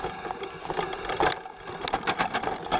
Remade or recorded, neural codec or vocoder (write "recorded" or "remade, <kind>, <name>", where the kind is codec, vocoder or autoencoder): recorded